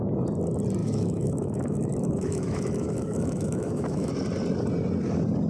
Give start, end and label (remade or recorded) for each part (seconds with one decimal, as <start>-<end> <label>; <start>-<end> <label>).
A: 0.0-0.8 recorded; 0.8-4.1 remade; 4.1-5.5 recorded